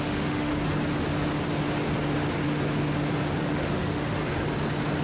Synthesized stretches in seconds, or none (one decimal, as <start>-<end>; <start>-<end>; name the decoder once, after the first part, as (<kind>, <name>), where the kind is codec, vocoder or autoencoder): 0.0-0.5 (autoencoder, DAC-VAE); 3.5-4.2